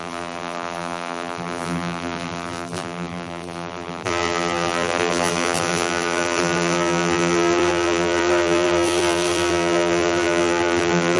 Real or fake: fake